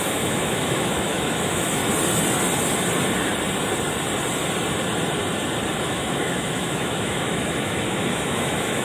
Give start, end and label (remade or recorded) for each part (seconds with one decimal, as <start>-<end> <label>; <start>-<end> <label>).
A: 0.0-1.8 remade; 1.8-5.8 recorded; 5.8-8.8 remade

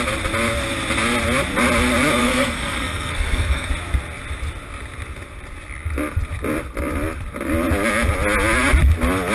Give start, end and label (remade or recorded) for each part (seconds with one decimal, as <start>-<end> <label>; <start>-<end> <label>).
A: 0.0-2.2 recorded; 2.2-3.7 remade; 3.7-9.3 recorded

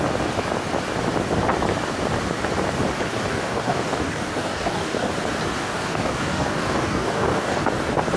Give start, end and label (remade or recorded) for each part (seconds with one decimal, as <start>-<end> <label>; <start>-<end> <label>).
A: 0.0-3.3 recorded; 3.3-5.1 remade; 5.1-5.6 recorded; 5.6-7.6 remade; 7.6-8.2 recorded